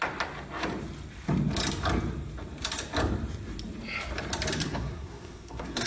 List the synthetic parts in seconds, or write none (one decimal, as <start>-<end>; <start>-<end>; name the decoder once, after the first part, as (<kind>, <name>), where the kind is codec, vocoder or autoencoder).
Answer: 4.6-5.9 (codec, SNAC)